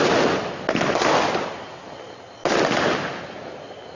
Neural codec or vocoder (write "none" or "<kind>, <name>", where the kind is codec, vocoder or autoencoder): none